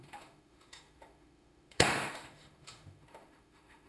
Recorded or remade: remade